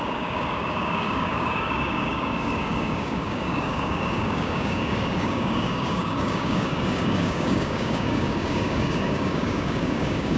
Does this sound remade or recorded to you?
remade